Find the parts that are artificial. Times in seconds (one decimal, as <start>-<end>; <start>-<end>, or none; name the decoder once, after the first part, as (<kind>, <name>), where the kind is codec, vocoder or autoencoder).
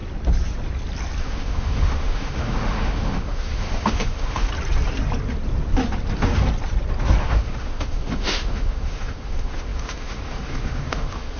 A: 1.2-4.5 (autoencoder, DAC-VAE); 7.2-11.4